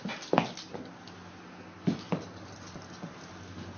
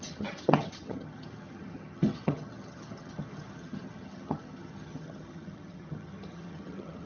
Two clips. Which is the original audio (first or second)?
first